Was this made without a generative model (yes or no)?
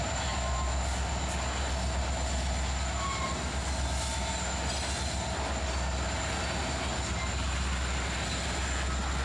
yes